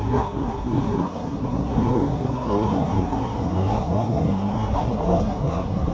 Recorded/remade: remade